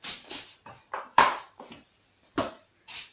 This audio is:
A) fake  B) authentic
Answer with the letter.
A